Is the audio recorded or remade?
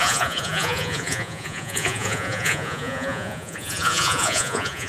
remade